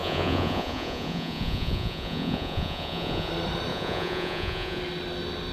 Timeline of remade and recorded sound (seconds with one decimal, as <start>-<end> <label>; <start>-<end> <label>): 0.0-3.3 remade; 3.3-3.7 recorded; 3.7-4.8 remade; 4.8-5.5 recorded